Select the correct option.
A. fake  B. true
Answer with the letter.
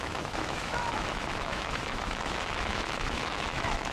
A